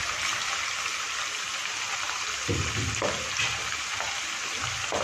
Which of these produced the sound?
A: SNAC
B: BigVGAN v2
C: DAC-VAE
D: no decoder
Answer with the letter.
D